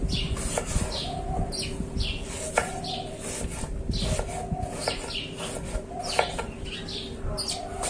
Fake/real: real